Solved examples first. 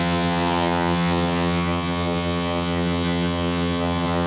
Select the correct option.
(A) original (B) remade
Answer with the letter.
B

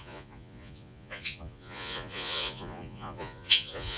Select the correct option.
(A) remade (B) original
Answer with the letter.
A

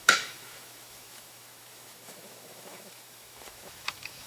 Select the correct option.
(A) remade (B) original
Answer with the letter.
A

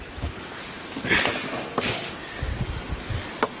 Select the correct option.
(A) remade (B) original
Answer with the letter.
B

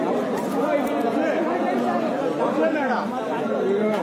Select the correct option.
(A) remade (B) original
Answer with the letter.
B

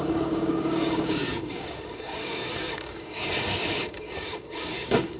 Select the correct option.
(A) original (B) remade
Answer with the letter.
B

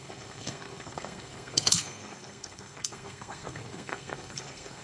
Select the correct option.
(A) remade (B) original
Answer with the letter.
A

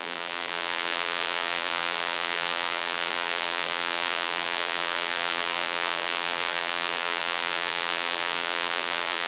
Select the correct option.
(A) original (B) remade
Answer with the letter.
B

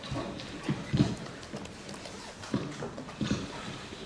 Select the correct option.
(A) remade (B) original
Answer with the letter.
A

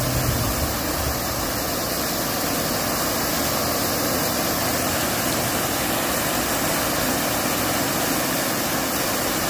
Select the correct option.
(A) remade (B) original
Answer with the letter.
B